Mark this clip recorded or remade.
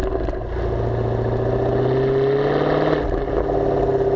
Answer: recorded